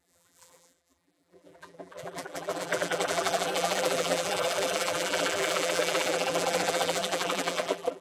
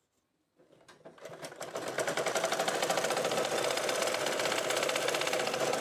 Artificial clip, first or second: first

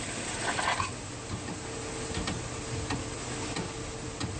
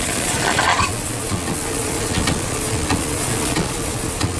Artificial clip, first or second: second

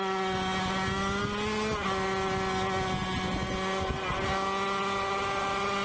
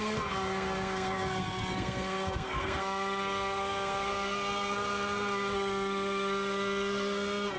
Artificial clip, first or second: second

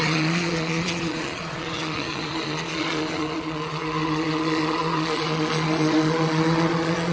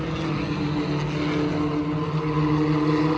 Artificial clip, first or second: first